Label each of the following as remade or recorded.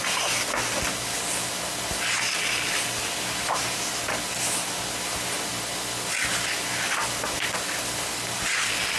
recorded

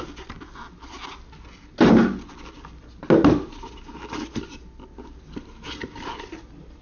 recorded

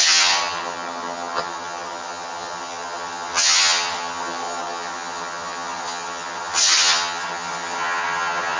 remade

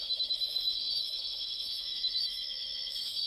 remade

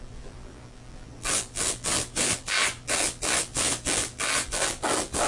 remade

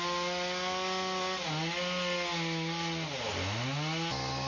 recorded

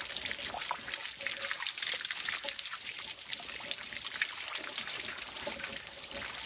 recorded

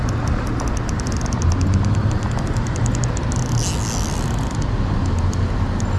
recorded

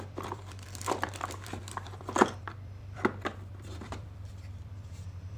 remade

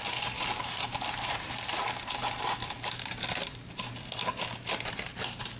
recorded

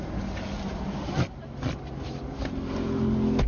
recorded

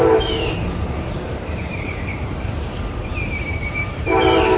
remade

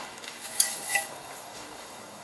remade